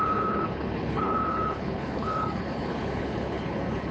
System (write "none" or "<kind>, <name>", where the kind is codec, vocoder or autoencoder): codec, HILCodec